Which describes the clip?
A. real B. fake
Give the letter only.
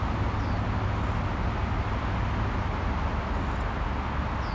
A